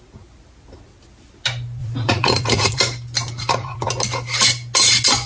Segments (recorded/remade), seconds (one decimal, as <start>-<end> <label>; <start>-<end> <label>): 0.0-1.8 recorded; 1.8-2.8 remade; 2.8-3.2 recorded; 3.2-3.9 remade; 3.9-5.3 recorded